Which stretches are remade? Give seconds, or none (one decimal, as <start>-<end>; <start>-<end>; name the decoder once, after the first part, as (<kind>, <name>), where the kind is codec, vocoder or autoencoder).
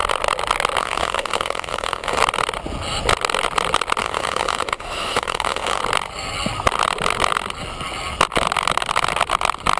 0.8-2.2 (autoencoder, DAC-VAE); 4.0-5.8